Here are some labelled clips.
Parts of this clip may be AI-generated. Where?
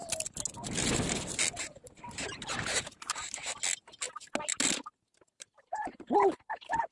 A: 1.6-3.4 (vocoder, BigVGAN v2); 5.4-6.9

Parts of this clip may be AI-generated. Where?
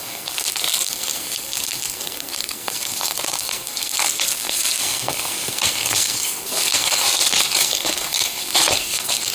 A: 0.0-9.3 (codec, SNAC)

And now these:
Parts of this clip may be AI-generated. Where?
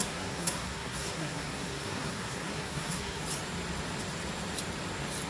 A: 0.0-3.2 (codec, SNAC)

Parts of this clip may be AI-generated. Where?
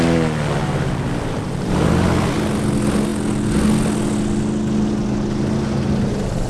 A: 0.6-1.9 (vocoder, BigVGAN v2)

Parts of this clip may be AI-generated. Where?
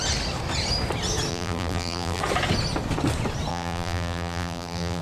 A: 1.3-2.2 (vocoder, BigVGAN v2); 3.5-5.0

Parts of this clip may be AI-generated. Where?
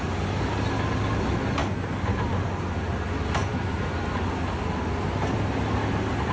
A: none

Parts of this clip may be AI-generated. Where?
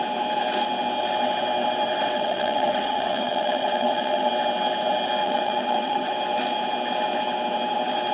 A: 2.0-4.3 (vocoder, WaveNeXt); 5.2-6.1